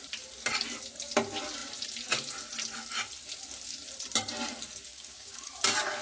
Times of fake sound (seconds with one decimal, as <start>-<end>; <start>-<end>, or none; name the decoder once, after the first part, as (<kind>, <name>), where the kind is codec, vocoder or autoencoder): 4.9-5.5 (codec, DAC)